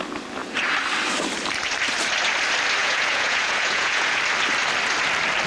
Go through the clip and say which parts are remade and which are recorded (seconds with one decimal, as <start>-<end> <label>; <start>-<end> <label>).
0.0-2.8 recorded; 2.8-4.2 remade; 4.2-5.5 recorded